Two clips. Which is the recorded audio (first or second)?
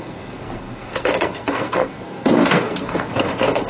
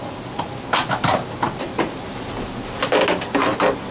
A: second